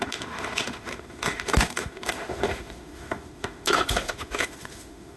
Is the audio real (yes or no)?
no